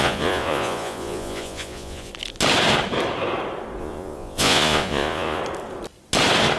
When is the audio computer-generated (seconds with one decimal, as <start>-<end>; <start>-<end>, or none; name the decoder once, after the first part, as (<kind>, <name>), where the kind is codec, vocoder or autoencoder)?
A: 0.0-2.1 (vocoder, Vocos); 3.8-5.4